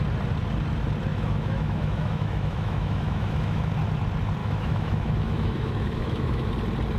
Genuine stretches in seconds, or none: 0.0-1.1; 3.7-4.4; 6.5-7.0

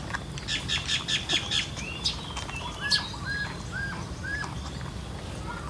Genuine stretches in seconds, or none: 0.0-5.7

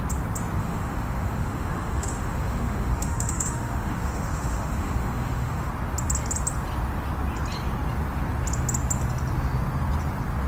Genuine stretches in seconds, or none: 0.0-0.6; 5.7-10.5